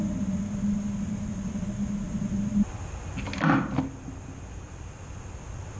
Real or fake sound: real